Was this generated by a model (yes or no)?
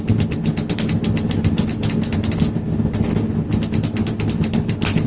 no